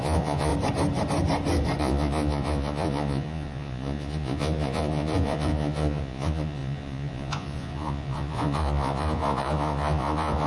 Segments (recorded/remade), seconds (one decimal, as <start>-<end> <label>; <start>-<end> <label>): 0.0-0.5 remade; 0.5-1.8 recorded; 1.8-10.5 remade